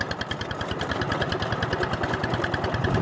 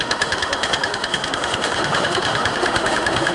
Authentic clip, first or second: first